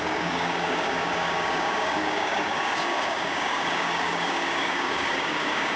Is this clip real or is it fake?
fake